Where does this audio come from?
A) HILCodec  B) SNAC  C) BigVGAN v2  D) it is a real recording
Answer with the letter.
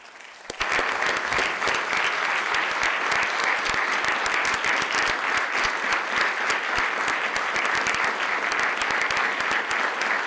D